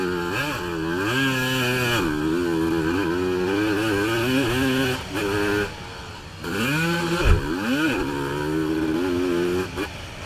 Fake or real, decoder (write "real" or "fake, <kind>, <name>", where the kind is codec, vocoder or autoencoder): real